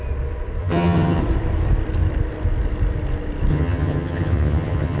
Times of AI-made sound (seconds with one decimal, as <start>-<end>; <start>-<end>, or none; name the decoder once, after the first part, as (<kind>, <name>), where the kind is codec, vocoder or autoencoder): 0.6-1.2 (vocoder, HiFi-GAN); 3.5-5.0